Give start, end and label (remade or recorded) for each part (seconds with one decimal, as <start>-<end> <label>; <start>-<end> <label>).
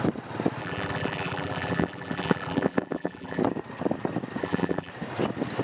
0.0-0.6 recorded; 0.6-3.4 remade; 3.4-4.4 recorded; 4.4-4.9 remade; 4.9-5.6 recorded